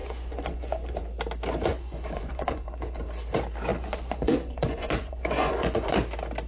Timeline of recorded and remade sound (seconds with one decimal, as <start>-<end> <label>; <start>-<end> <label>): 0.0-1.0 remade; 1.0-1.7 recorded; 1.7-3.0 remade; 3.0-3.7 recorded; 3.7-6.0 remade; 6.0-6.5 recorded